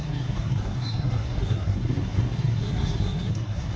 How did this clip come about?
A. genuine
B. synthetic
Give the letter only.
B